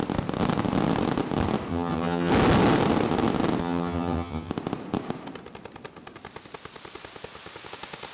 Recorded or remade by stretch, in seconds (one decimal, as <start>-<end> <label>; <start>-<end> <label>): 0.0-1.7 recorded; 1.7-2.3 remade; 2.3-3.6 recorded; 3.6-4.5 remade; 4.5-8.1 recorded